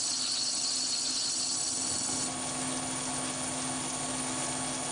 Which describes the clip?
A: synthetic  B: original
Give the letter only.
B